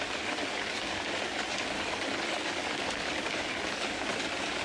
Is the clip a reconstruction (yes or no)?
yes